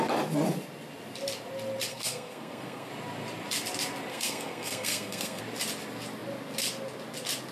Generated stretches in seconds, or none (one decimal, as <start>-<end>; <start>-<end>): 1.9-2.9; 4.1-5.4